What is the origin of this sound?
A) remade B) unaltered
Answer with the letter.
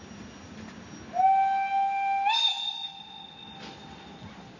B